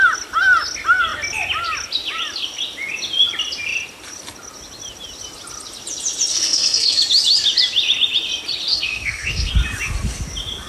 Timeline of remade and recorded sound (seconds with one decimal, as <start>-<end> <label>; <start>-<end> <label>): 0.0-6.3 recorded; 6.3-7.0 remade; 7.0-8.7 recorded; 8.7-9.5 remade; 9.5-10.7 recorded